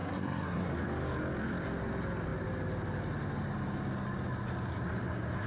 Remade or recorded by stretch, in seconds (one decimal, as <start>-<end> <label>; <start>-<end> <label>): 0.0-0.7 remade; 0.7-5.5 recorded